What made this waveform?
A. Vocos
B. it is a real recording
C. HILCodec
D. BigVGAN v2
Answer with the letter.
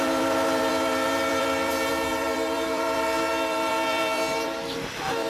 D